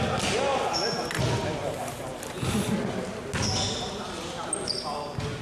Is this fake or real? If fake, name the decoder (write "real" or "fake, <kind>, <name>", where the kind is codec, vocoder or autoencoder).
real